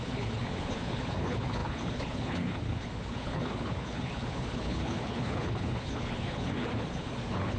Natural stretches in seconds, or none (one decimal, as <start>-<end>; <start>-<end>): none